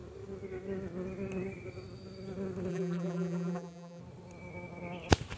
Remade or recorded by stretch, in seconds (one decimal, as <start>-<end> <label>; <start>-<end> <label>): 0.0-2.7 recorded; 2.7-4.0 remade; 4.0-5.4 recorded

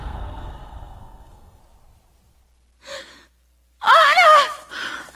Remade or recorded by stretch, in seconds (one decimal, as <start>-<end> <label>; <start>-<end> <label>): 0.0-1.6 remade; 1.6-5.1 recorded

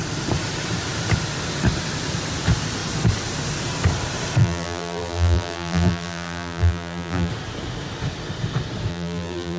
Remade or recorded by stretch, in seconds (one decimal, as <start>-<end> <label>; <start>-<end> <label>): 0.0-4.4 recorded; 4.4-7.3 remade; 7.3-8.9 recorded; 8.9-9.6 remade